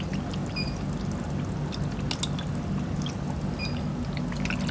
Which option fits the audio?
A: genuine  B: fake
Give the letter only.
A